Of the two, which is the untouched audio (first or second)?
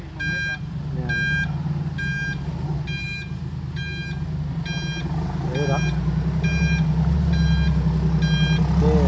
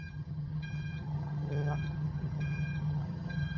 first